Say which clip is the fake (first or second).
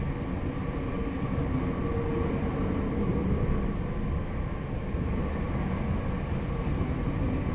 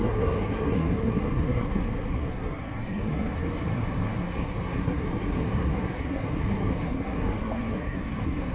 second